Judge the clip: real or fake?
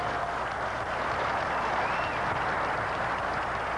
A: real